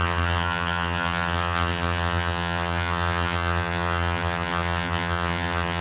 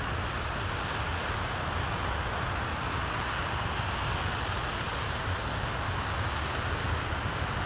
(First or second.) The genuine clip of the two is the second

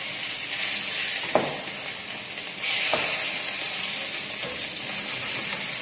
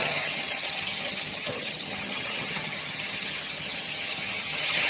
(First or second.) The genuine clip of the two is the first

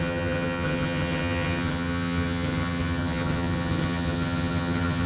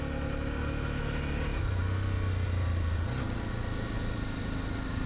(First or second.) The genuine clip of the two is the second